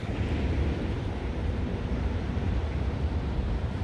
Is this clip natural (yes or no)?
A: no